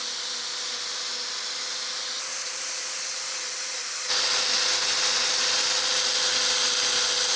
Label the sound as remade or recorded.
recorded